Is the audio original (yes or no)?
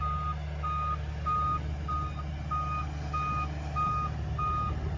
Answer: yes